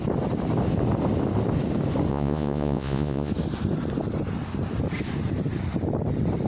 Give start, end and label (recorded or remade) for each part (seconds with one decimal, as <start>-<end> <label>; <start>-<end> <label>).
0.0-2.1 recorded; 2.1-3.3 remade; 3.3-6.5 recorded